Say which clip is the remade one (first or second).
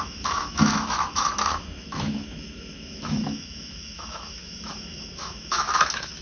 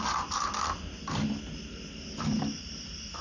first